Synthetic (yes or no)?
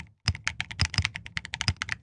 no